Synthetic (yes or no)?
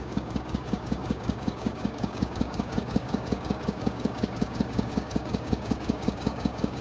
yes